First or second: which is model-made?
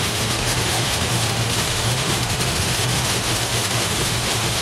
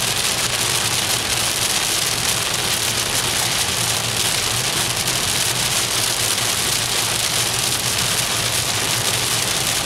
first